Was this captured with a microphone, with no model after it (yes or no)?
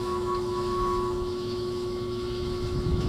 no